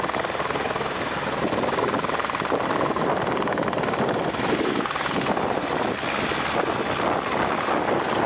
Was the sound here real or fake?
real